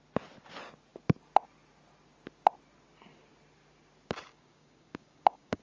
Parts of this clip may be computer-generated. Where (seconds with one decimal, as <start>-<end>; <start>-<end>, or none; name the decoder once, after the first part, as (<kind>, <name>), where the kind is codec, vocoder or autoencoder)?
4.3-5.6 (codec, DAC)